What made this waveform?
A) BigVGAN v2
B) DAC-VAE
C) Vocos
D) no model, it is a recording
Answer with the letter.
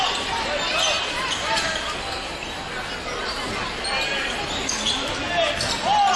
D